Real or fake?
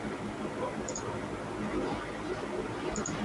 real